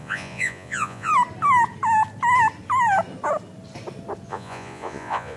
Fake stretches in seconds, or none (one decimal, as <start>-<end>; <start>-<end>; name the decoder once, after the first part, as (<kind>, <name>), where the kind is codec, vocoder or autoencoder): 0.0-1.1 (vocoder, Vocos); 4.3-5.4

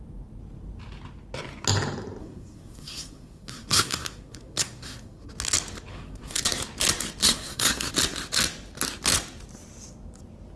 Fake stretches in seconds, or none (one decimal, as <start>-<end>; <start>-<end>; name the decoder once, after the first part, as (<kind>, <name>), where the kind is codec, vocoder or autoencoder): 2.2-5.3 (codec, SNAC); 5.9-6.4; 7.2-7.9